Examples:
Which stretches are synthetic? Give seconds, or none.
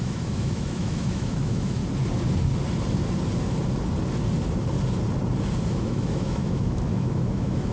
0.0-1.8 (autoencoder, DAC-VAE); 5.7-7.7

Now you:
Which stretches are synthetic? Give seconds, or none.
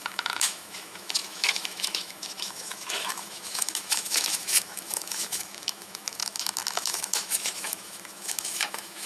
0.0-9.1 (autoencoder, DAC-VAE)